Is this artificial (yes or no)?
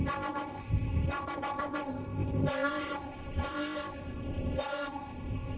yes